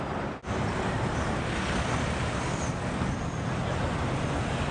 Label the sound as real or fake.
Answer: real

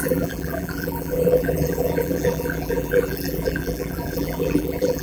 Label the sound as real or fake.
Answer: fake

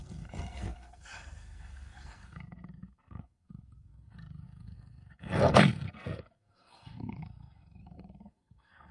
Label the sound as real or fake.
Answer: fake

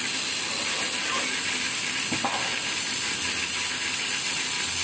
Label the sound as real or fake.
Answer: real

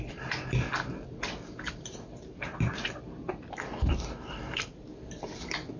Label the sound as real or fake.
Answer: fake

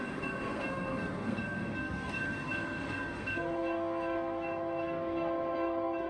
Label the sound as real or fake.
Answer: fake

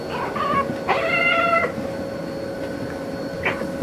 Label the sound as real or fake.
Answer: real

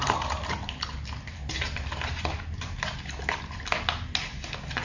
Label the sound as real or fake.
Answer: real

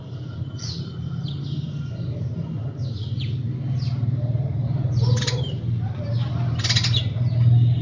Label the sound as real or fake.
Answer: real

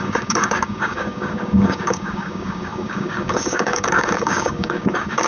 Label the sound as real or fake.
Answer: fake